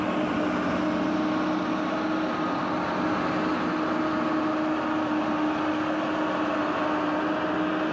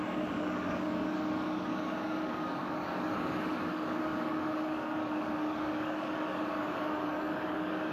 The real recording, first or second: first